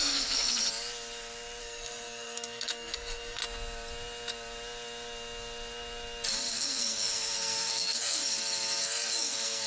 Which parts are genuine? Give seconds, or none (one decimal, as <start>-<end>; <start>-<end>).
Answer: 0.6-1.6; 3.4-6.5; 8.2-8.8